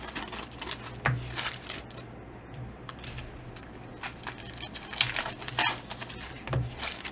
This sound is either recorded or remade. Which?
recorded